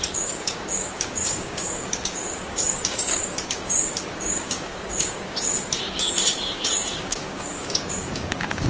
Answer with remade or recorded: remade